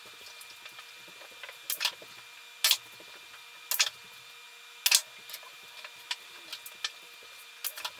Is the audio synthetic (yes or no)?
no